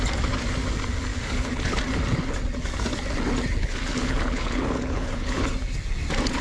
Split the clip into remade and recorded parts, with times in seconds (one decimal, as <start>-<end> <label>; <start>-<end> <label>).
0.0-1.1 recorded; 1.1-1.8 remade; 1.8-3.6 recorded; 3.6-5.4 remade; 5.4-6.4 recorded